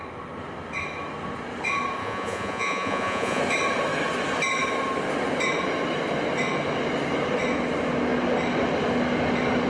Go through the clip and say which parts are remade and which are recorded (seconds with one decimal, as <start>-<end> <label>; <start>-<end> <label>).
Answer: 0.0-2.0 recorded; 2.0-3.4 remade; 3.4-9.7 recorded